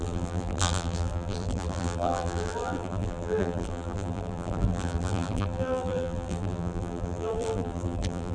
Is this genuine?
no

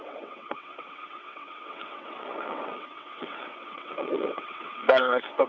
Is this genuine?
no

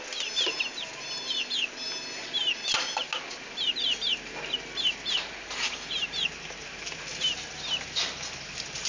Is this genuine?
yes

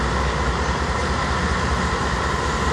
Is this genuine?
no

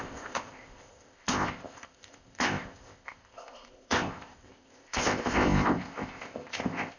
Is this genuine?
no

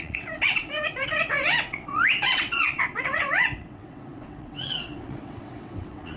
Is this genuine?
no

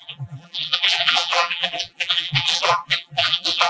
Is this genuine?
no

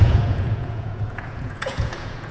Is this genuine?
no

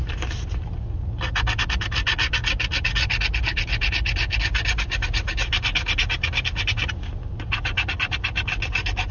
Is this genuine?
yes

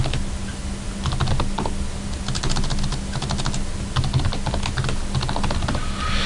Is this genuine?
yes